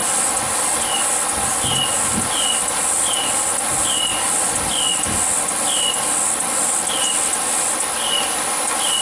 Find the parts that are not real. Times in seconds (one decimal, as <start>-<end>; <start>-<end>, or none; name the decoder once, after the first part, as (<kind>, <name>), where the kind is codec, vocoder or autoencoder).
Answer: none